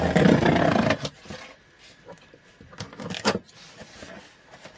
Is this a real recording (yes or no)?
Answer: yes